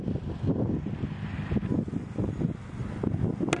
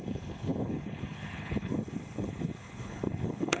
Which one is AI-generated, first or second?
second